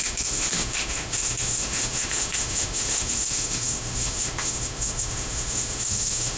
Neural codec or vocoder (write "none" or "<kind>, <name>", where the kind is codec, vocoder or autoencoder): autoencoder, DAC-VAE